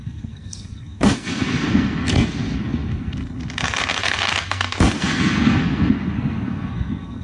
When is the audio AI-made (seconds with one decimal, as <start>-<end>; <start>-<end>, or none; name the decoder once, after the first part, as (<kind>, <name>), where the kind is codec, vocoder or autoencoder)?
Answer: 0.0-7.2 (codec, SNAC)